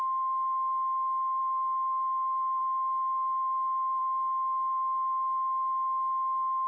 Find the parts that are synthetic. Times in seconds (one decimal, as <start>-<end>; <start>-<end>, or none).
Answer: none